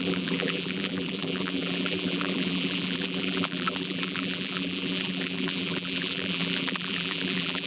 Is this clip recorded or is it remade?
remade